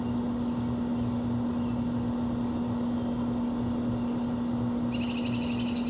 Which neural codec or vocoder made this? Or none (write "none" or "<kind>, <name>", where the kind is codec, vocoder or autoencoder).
none